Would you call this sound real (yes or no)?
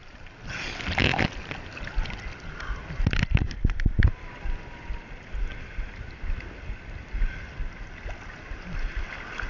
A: yes